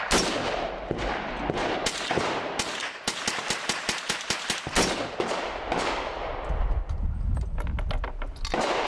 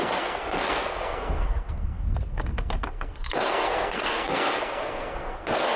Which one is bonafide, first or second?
first